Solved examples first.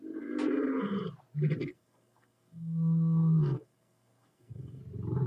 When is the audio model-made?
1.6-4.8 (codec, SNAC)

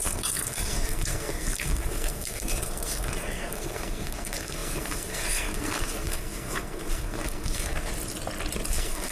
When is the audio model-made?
0.0-7.9 (codec, SNAC); 8.7-9.1